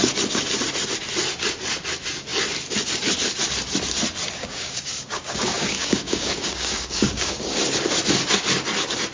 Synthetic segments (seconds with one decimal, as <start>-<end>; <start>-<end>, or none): 4.4-7.6